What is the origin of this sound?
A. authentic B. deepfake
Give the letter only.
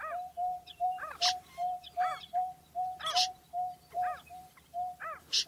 A